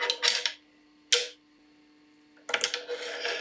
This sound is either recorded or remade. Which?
recorded